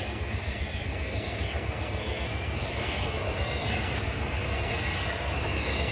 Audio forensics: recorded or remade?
remade